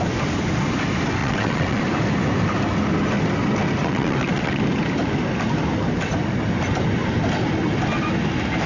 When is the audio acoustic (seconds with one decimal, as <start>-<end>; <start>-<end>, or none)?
0.0-1.2; 1.8-3.8; 4.6-8.7